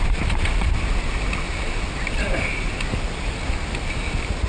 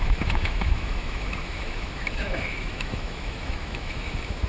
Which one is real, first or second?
first